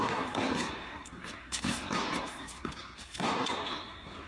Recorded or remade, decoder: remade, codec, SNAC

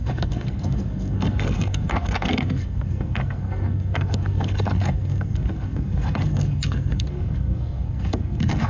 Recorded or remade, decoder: remade, codec, SNAC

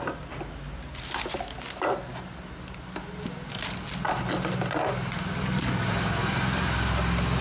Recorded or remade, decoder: recorded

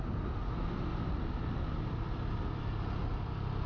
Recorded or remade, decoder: recorded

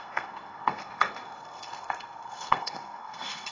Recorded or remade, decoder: remade, codec, SNAC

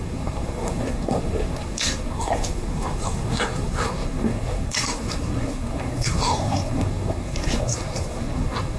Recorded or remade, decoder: remade, codec, SNAC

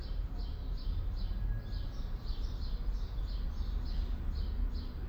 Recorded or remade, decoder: recorded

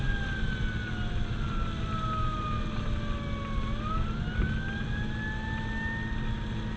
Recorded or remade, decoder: recorded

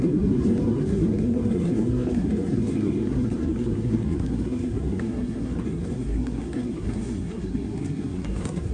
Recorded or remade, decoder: remade, codec, SNAC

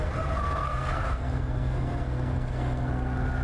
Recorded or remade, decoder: remade, codec, SNAC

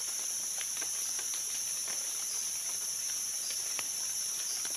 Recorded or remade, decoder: recorded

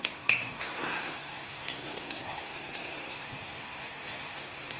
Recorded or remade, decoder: remade, codec, SNAC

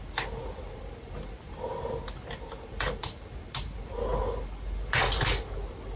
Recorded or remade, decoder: recorded